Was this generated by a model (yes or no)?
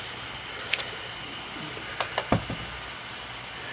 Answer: no